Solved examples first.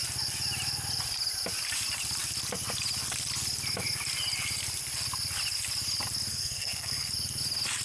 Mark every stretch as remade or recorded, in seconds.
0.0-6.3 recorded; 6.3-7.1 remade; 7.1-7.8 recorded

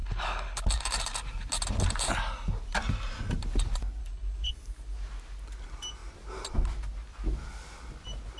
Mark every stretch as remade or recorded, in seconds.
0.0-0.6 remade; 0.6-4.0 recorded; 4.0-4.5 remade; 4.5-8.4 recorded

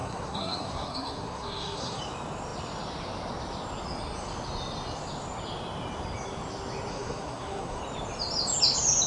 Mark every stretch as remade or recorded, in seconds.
0.0-2.0 remade; 2.0-6.9 recorded; 6.9-7.8 remade; 7.8-9.1 recorded

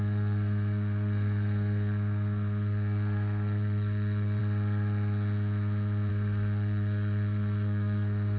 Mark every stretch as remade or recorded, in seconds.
0.0-4.4 remade; 4.4-6.1 recorded; 6.1-8.4 remade